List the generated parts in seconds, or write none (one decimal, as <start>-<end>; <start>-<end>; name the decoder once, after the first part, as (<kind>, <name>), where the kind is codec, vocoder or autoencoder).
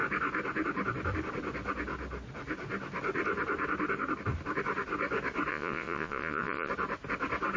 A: 5.5-6.7 (vocoder, Vocos)